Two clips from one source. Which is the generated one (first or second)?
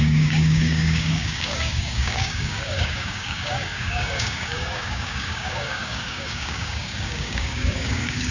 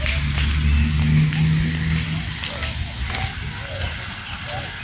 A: first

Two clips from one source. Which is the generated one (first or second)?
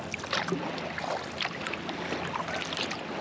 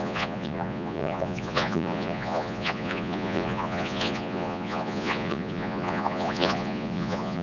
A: second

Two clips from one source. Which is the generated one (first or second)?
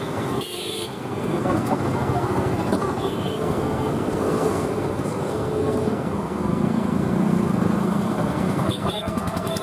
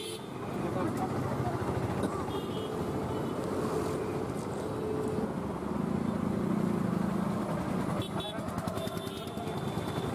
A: first